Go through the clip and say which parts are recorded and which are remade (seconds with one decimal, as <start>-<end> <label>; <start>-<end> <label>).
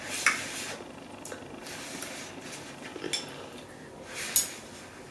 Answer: 0.0-1.6 recorded; 1.6-2.2 remade; 2.2-5.1 recorded